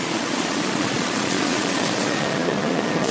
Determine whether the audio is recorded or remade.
remade